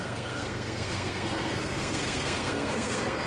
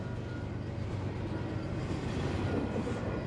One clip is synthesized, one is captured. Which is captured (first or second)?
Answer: second